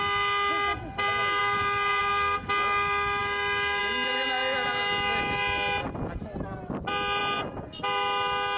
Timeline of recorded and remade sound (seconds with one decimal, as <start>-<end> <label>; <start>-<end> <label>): 0.0-8.6 recorded